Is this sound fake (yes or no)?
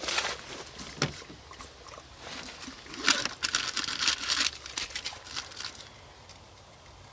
no